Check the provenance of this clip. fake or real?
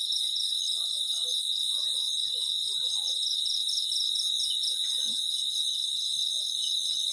real